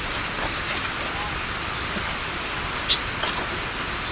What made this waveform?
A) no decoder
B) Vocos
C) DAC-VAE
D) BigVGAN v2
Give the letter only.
D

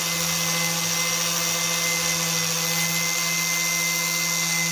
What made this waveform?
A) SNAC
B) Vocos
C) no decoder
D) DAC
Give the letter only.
C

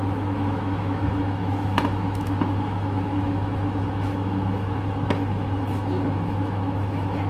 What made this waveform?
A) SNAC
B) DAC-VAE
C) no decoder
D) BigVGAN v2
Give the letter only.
B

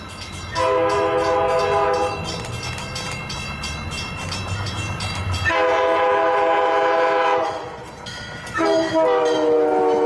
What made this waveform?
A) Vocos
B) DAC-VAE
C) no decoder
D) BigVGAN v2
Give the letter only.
C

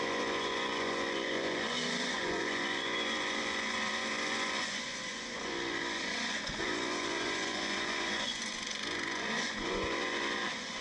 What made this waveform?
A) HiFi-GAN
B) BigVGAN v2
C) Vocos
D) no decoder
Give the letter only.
C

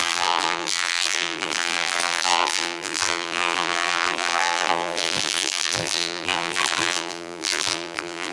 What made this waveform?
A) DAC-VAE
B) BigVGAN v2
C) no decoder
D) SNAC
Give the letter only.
B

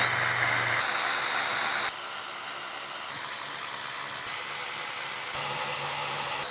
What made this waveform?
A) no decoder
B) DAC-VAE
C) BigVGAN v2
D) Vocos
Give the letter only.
A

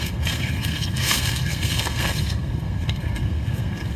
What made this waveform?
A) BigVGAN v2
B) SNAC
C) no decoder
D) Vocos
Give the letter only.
B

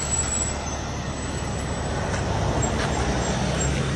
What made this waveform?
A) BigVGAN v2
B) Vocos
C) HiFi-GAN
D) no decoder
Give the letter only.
D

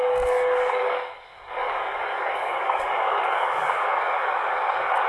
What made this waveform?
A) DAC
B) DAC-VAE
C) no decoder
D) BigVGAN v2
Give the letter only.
A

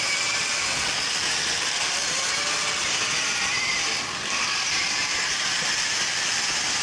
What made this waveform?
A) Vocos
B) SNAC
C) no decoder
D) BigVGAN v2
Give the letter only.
C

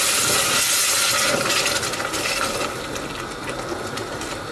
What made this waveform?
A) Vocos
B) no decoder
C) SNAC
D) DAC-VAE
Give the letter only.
B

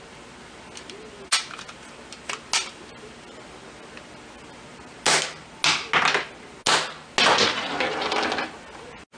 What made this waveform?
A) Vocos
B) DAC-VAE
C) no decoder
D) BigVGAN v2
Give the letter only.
C